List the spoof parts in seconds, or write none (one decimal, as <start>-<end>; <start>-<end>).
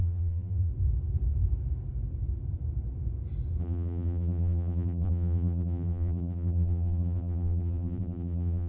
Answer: 0.0-0.7; 3.6-8.7